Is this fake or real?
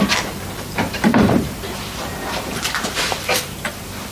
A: fake